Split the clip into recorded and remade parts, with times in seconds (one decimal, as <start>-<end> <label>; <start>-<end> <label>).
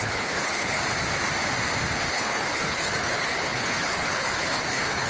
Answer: 0.0-0.8 remade; 0.8-2.1 recorded; 2.1-5.1 remade